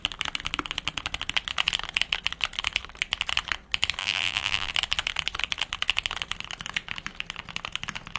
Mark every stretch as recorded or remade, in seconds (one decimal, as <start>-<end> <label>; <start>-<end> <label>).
0.0-4.0 recorded; 4.0-4.7 remade; 4.7-8.2 recorded